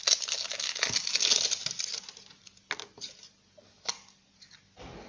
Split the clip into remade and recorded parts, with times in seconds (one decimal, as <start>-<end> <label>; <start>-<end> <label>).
0.0-5.1 recorded